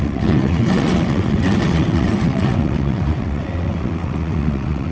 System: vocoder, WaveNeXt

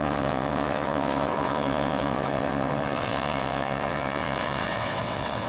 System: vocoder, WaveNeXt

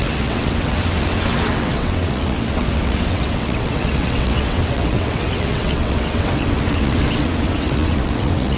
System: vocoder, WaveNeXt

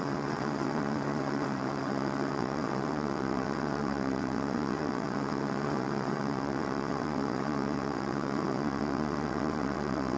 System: vocoder, WaveNeXt